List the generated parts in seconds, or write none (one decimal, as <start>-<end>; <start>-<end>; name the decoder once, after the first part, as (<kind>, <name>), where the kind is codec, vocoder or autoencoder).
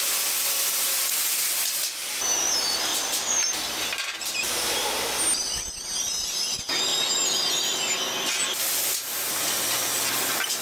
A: 2.0-4.9 (vocoder, BigVGAN v2)